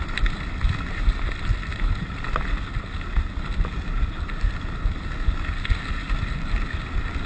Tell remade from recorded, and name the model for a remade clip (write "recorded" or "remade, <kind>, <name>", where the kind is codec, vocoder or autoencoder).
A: recorded